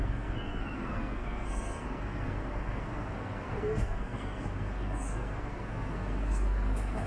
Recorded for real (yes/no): no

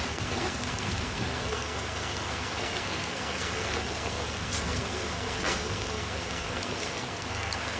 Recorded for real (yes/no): no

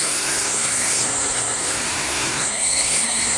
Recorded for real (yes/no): no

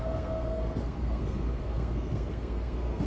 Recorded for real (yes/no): no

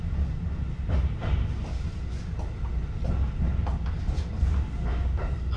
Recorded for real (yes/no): yes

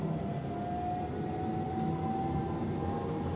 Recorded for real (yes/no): yes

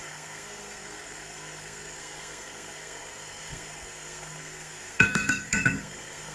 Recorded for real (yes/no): no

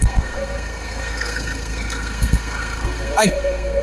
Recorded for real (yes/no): no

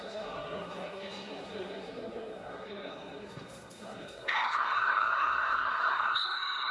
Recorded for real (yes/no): no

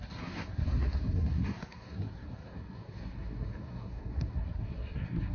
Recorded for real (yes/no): no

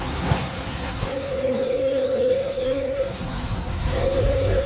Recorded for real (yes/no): no